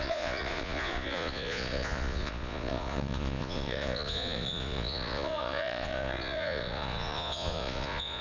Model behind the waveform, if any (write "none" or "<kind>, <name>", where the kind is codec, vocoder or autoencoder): vocoder, Vocos